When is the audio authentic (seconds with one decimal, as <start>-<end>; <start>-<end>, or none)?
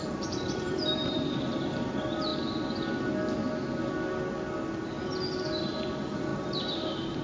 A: 2.3-5.6